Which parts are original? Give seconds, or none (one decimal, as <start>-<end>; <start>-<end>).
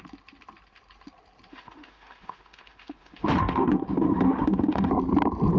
0.0-1.5; 4.9-5.6